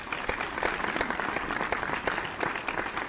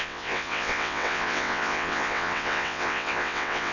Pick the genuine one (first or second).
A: first